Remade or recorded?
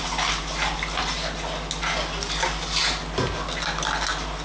recorded